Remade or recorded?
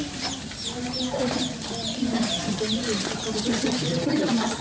recorded